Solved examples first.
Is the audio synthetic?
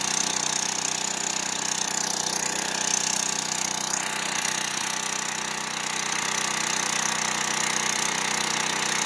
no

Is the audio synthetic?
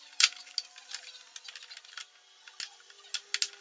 no